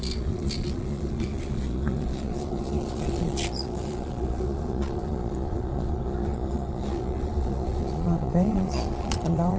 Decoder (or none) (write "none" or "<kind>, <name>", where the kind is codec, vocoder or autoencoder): vocoder, Vocos